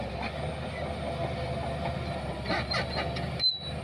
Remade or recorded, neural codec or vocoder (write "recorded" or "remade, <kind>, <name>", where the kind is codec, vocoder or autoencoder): recorded